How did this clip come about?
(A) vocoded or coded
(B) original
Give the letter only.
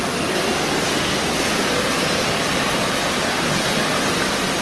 B